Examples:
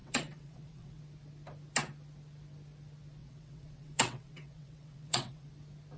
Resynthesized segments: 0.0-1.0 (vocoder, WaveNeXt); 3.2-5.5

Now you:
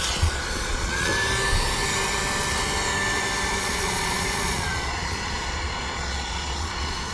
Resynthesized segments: 0.0-1.1 (vocoder, Vocos); 3.6-7.1

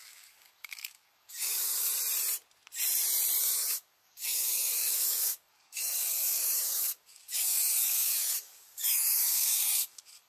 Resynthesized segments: 0.0-1.9 (codec, DAC); 3.4-10.3